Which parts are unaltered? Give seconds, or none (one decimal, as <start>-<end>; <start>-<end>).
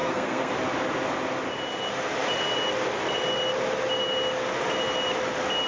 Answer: 0.5-5.7